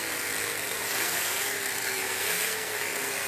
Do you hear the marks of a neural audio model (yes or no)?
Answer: yes